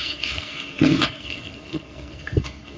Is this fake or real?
fake